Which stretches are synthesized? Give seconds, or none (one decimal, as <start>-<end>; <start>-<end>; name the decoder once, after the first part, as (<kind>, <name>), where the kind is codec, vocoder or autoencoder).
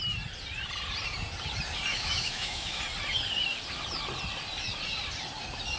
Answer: 1.9-2.8 (autoencoder, DAC-VAE)